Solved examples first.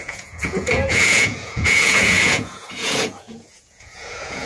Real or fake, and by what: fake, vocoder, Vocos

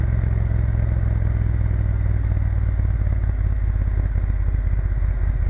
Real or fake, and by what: real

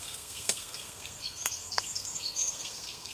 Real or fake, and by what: fake, codec, SNAC